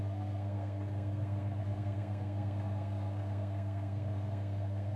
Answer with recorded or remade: remade